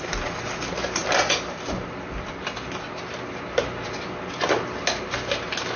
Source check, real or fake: real